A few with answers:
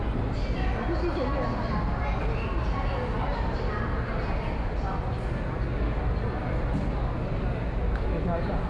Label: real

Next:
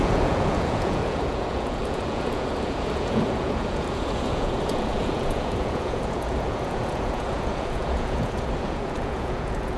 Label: fake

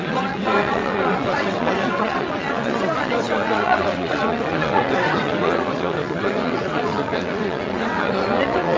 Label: fake